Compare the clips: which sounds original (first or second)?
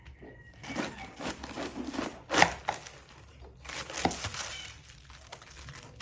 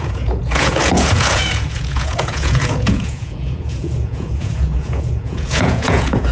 first